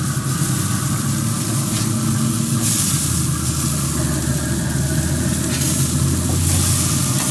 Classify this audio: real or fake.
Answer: real